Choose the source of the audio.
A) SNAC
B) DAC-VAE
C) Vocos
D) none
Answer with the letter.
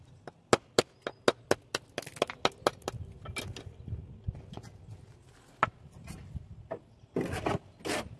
D